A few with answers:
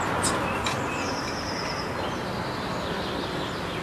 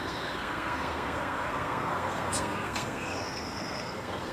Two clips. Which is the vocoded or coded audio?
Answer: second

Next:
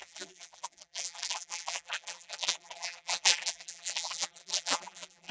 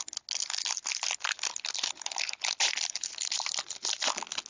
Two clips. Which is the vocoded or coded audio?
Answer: first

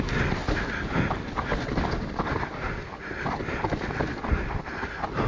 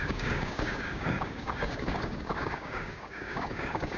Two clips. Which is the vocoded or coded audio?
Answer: second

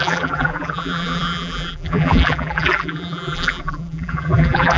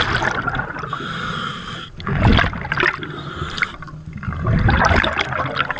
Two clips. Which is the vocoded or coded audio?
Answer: first